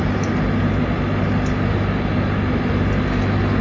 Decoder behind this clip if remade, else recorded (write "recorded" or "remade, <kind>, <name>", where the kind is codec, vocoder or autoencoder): recorded